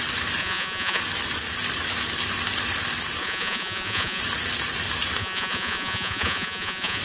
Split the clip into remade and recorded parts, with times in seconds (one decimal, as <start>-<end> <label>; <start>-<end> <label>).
0.0-0.4 recorded; 0.4-1.0 remade; 1.0-3.2 recorded; 3.2-4.2 remade; 4.2-5.2 recorded; 5.2-7.0 remade